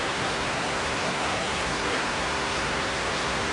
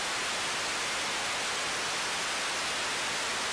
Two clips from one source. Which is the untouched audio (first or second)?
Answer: second